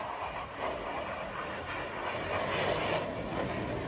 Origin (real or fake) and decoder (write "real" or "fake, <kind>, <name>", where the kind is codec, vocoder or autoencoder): real